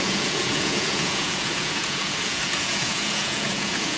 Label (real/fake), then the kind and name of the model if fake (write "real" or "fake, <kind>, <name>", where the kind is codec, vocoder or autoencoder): fake, vocoder, Vocos